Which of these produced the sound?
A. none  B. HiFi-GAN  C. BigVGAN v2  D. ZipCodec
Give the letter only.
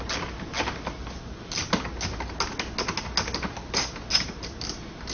A